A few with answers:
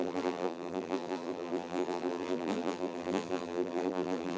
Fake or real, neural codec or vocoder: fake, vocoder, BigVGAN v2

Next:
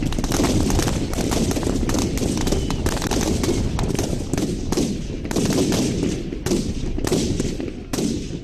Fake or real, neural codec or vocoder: real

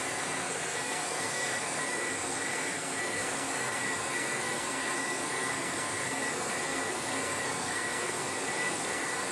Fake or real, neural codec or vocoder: fake, codec, SNAC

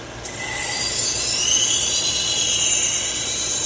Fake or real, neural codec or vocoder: real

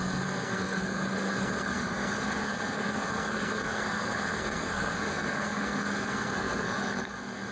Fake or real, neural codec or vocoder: fake, codec, SNAC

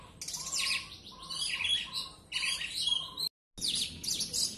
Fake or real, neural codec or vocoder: real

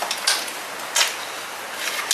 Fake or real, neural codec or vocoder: real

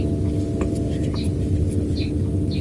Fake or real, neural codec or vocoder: real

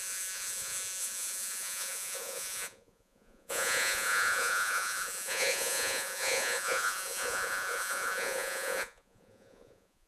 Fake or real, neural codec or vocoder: fake, vocoder, Vocos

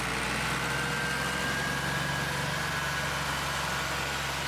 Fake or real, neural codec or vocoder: real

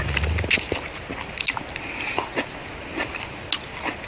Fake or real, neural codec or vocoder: real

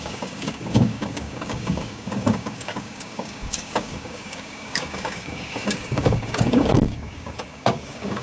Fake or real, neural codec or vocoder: fake, codec, DAC